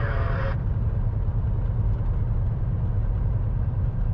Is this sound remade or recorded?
recorded